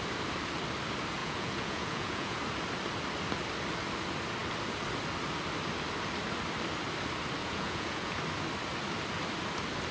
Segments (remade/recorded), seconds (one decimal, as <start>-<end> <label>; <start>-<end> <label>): 0.0-1.2 recorded; 1.2-2.4 remade; 2.4-7.4 recorded; 7.4-8.2 remade; 8.2-9.9 recorded

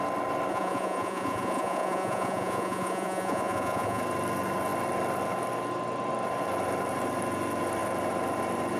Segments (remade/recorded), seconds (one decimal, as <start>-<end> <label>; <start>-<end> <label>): 0.0-0.5 recorded; 0.5-4.0 remade; 4.0-8.8 recorded